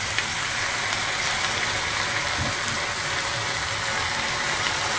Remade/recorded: recorded